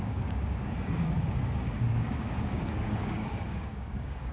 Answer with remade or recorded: remade